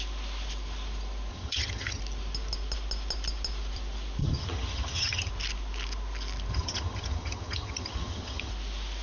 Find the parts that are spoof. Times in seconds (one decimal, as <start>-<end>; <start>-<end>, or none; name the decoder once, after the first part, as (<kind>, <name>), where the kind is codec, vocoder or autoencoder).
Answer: 1.3-2.0 (vocoder, HiFi-GAN); 4.2-5.3; 6.5-8.5